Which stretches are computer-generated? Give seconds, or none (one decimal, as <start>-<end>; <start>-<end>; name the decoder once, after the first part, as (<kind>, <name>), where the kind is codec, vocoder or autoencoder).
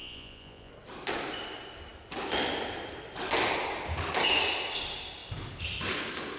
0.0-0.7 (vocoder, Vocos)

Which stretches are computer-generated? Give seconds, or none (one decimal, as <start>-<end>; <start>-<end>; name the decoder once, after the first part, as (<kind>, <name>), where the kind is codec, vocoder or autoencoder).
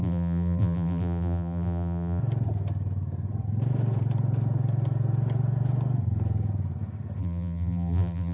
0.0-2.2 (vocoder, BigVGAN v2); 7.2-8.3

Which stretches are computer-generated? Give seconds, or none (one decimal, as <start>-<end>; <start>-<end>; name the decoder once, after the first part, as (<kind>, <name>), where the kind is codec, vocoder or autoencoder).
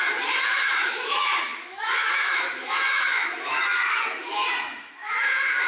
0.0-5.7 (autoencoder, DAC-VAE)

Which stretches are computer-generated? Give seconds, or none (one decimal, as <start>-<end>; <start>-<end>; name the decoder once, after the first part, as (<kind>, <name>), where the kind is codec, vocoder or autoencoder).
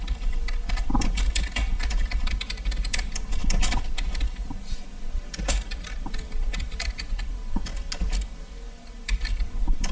0.0-7.7 (vocoder, BigVGAN v2); 8.7-9.9